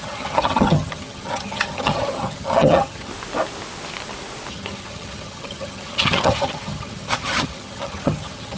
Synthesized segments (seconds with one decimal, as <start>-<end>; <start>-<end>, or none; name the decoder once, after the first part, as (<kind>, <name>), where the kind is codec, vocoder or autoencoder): 0.0-3.1 (vocoder, HiFi-GAN); 4.5-8.6